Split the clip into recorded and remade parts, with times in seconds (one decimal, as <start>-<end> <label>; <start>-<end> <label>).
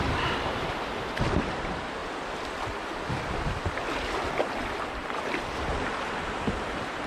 0.0-7.1 recorded